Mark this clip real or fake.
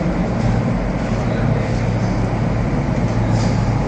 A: real